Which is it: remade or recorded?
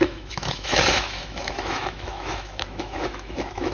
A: remade